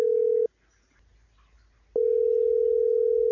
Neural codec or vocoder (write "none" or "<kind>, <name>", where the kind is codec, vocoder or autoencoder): none